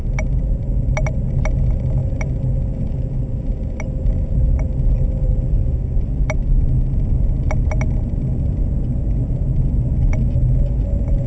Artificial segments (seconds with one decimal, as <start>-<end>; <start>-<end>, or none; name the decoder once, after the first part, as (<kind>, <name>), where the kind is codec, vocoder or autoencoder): none